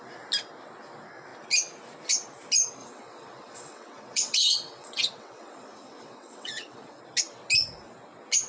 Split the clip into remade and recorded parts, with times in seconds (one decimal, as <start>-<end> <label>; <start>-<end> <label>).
0.0-2.8 recorded; 2.8-7.0 remade; 7.0-8.5 recorded

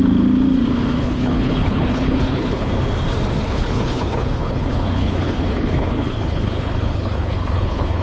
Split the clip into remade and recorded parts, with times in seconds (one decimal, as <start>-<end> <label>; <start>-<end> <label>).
0.0-1.0 recorded; 1.0-2.7 remade; 2.7-3.4 recorded; 3.4-8.0 remade

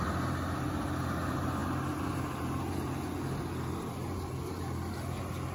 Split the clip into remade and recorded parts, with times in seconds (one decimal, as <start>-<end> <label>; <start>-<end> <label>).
0.0-5.5 recorded